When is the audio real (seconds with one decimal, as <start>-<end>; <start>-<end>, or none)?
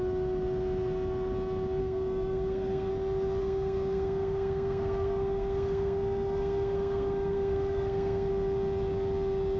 0.0-1.8; 2.9-3.4; 8.3-9.6